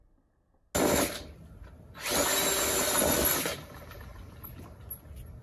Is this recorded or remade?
recorded